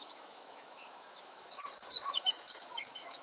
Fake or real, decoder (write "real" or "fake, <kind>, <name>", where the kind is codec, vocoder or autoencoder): fake, autoencoder, DAC-VAE